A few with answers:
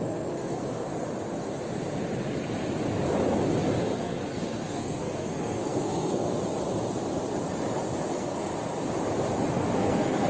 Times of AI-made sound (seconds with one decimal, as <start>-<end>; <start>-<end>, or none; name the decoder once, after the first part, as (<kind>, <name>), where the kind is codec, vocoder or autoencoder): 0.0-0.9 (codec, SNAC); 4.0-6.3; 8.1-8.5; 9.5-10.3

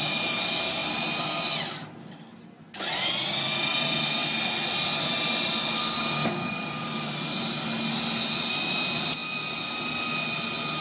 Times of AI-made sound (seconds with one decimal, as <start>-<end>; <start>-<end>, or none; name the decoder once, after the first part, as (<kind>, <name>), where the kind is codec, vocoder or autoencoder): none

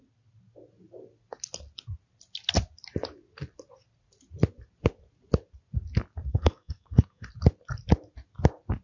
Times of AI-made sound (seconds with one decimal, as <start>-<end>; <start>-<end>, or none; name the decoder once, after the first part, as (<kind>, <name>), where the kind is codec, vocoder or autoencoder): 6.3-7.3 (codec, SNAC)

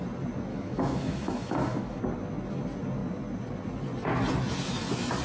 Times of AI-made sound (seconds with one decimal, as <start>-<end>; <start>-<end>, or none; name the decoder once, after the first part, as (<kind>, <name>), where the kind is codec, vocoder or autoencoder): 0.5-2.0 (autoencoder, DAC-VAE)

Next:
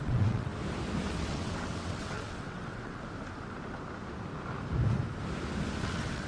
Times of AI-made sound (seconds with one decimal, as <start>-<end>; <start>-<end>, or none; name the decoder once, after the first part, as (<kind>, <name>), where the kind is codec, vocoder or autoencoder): 0.0-0.5 (vocoder, WaveNeXt); 1.1-3.0; 5.8-6.3